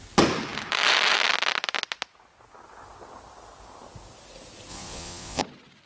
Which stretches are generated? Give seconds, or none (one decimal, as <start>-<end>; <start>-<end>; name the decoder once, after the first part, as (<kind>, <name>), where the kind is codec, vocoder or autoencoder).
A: 4.7-5.4 (vocoder, Vocos)